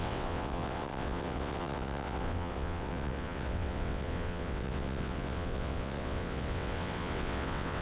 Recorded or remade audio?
remade